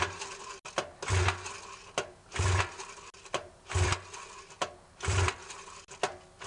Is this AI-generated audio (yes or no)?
no